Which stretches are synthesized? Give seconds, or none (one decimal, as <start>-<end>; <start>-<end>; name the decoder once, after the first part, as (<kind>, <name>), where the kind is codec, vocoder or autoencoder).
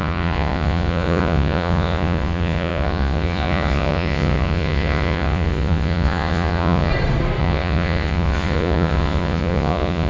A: 0.0-6.9 (vocoder, Vocos); 7.4-10.1